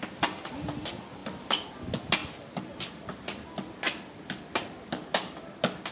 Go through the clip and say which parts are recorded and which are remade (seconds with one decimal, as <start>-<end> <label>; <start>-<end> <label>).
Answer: 0.0-5.9 recorded